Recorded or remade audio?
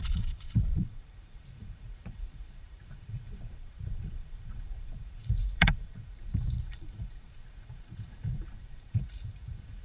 remade